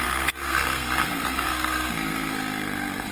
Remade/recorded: remade